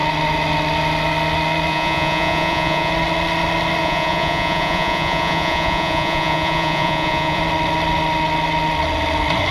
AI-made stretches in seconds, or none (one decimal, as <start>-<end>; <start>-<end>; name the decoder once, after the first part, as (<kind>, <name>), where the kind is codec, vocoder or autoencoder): 1.7-2.9 (vocoder, Vocos); 3.8-7.4